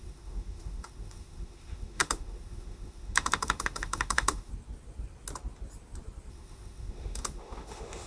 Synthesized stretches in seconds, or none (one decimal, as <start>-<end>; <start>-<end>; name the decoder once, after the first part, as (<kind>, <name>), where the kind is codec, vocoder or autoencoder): 0.0-4.5 (autoencoder, DAC-VAE); 6.3-8.1